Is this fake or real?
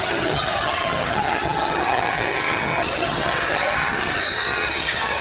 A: fake